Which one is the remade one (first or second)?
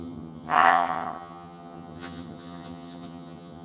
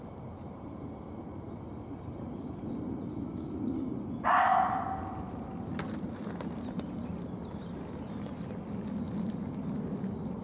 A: first